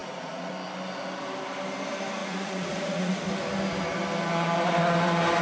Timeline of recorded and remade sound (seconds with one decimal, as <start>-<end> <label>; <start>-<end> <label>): 0.0-0.5 remade; 0.5-2.2 recorded; 2.2-3.3 remade; 3.3-5.4 recorded